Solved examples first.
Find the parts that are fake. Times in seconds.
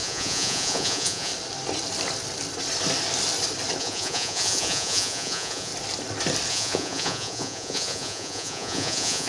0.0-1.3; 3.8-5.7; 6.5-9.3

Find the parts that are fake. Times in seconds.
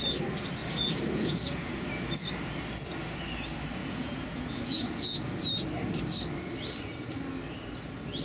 0.6-2.0; 3.8-5.4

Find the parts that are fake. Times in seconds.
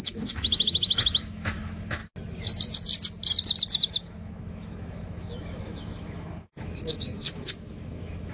0.0-2.0; 3.8-8.3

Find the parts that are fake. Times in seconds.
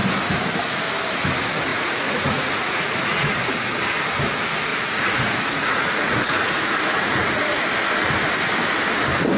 1.7-3.5; 4.7-7.6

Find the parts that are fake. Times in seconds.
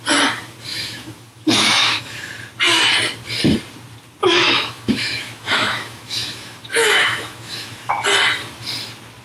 0.7-2.3; 4.2-7.9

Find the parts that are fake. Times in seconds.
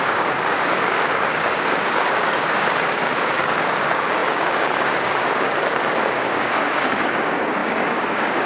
0.0-8.5